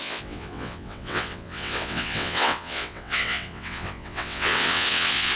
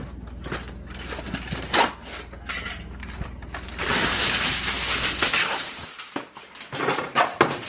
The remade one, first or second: first